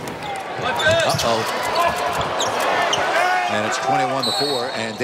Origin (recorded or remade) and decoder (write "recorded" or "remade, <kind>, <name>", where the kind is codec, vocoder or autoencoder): recorded